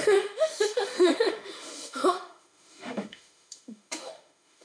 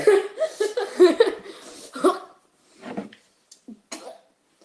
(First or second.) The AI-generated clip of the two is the first